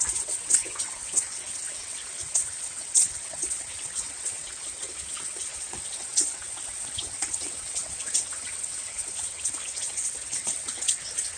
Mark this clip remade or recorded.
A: remade